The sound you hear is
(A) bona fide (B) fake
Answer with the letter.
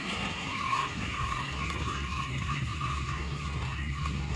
B